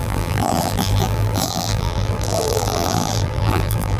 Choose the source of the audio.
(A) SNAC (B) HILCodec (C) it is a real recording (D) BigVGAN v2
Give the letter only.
D